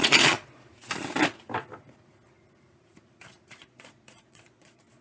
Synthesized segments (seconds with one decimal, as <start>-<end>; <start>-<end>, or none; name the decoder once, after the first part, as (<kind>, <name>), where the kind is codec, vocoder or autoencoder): 0.0-0.7 (vocoder, Vocos); 3.6-5.0